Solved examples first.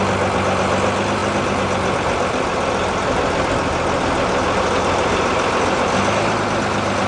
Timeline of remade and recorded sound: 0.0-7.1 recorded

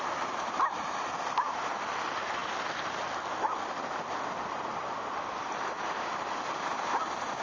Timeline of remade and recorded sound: 0.0-7.4 recorded

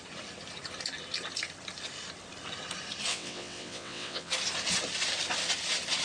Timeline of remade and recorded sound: 0.0-3.1 recorded; 3.1-4.3 remade; 4.3-6.0 recorded

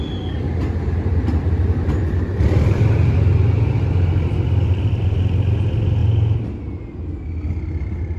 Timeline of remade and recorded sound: 0.0-1.1 recorded; 1.1-5.5 remade; 5.5-8.2 recorded

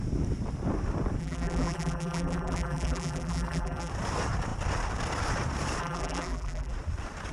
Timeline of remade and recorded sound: 0.0-1.2 recorded; 1.2-3.9 remade; 3.9-5.8 recorded; 5.8-6.7 remade; 6.7-7.3 recorded

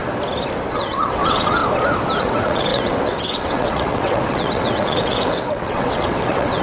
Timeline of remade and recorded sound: 0.0-0.7 recorded; 0.7-1.6 remade; 1.6-2.2 recorded; 2.2-6.6 remade